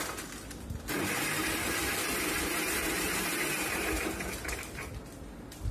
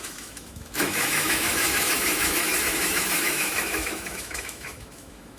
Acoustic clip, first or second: first